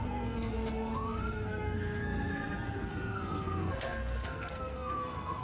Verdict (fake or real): fake